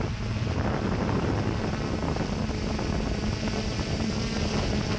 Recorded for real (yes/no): yes